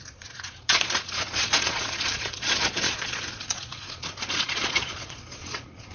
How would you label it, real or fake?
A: fake